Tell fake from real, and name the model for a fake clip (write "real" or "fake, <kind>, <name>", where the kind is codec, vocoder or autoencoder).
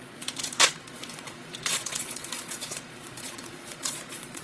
fake, vocoder, Vocos